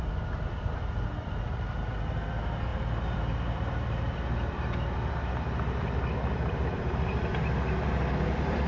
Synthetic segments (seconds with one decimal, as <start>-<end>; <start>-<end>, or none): 0.0-8.7